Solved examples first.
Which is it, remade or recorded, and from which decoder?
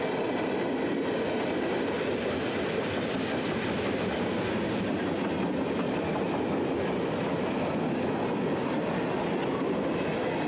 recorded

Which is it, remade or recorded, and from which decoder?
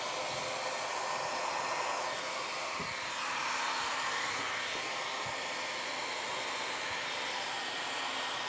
recorded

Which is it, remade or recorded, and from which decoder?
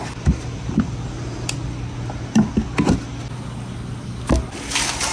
recorded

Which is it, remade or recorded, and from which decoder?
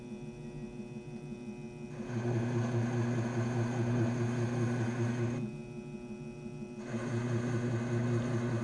recorded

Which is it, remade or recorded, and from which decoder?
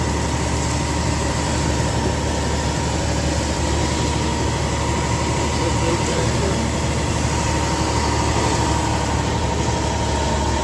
recorded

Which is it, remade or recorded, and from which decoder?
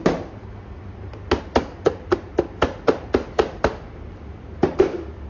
recorded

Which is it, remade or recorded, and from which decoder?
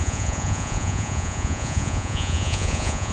remade, vocoder, Vocos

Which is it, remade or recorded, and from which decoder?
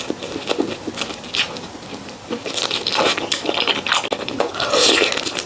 recorded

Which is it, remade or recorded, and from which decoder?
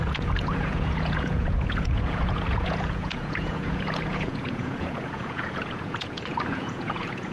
remade, vocoder, Vocos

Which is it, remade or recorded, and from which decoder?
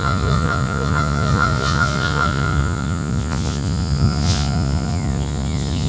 remade, vocoder, Vocos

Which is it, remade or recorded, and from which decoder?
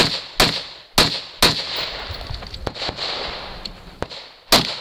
recorded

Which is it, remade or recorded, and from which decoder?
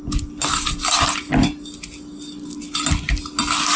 recorded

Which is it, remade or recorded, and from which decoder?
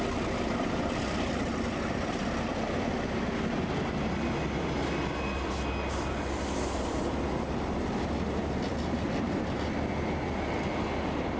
recorded